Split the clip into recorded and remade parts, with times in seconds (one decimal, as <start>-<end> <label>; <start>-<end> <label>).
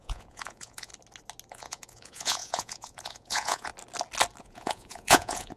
0.0-0.9 remade; 0.9-1.5 recorded; 1.5-3.7 remade; 3.7-4.4 recorded; 4.4-5.6 remade